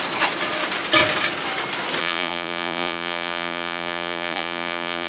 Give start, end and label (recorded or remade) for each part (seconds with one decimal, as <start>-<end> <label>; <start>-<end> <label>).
0.0-2.0 recorded; 2.0-5.1 remade